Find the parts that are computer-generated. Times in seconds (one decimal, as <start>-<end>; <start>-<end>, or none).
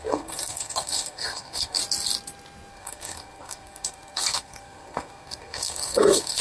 0.0-1.8; 2.7-6.4